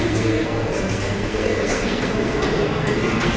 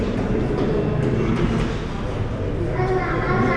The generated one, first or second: first